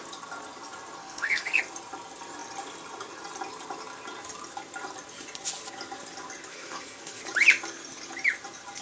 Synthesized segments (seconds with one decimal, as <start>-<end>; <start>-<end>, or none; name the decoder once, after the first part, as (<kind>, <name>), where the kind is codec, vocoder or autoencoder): 1.0-1.6 (codec, SNAC); 6.5-7.2